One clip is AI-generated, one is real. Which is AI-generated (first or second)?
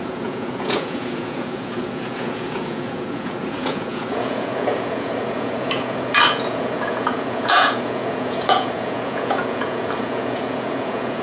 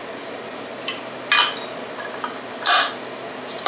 first